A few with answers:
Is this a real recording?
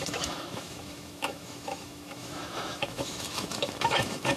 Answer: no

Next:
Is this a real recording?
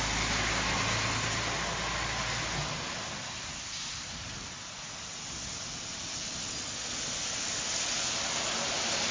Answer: yes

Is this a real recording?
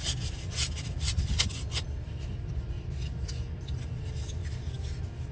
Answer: yes